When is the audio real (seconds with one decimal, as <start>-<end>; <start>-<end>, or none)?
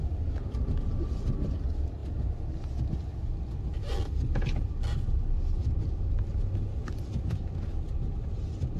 0.0-8.8